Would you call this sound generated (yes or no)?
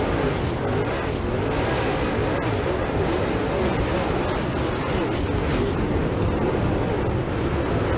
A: no